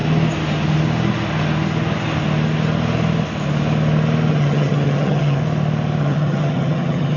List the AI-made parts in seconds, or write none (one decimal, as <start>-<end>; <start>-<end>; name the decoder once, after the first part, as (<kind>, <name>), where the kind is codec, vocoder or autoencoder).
4.3-5.4 (vocoder, HiFi-GAN); 6.0-7.2